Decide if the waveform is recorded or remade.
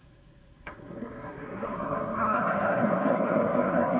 remade